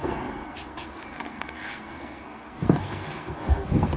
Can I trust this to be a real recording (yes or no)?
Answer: no